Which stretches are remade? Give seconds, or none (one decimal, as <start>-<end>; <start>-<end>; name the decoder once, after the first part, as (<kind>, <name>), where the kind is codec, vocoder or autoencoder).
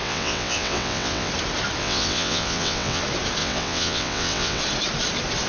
0.0-1.3 (vocoder, WaveNeXt); 1.8-3.0; 3.4-4.6